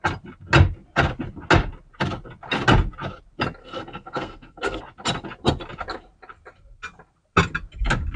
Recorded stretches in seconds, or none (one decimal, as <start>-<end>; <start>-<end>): 0.0-3.6; 4.8-8.2